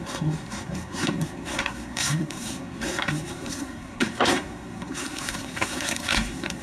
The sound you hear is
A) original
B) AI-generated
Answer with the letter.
B